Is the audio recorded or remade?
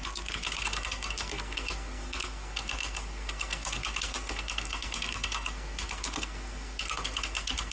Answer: remade